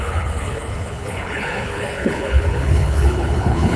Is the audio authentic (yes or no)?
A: no